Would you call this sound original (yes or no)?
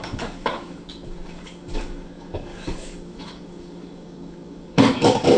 no